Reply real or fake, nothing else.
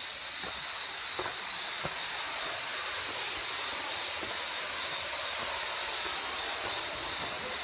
real